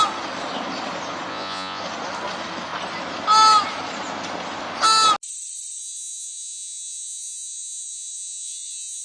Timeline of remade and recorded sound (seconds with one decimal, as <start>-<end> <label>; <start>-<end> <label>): 0.0-1.3 recorded; 1.3-1.8 remade; 1.8-5.8 recorded; 5.8-9.0 remade